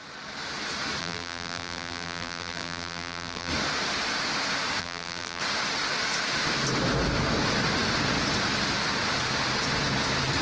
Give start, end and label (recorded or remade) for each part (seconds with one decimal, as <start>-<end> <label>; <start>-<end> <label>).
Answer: 0.0-1.0 recorded; 1.0-3.5 remade; 3.5-4.8 recorded; 4.8-5.4 remade; 5.4-10.4 recorded